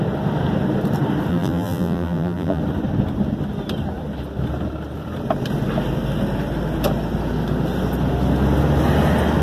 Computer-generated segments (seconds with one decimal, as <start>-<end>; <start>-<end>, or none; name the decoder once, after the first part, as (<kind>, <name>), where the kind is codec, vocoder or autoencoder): 1.3-2.6 (vocoder, BigVGAN v2)